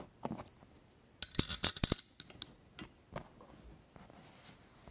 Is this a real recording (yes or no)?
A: yes